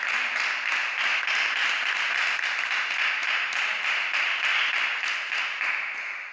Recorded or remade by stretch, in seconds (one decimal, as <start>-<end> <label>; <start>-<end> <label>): 0.0-6.3 recorded